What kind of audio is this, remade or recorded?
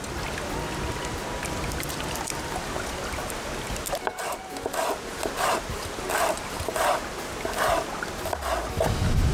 recorded